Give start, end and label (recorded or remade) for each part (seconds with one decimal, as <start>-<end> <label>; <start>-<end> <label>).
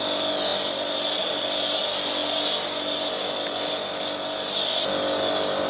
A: 0.0-5.7 recorded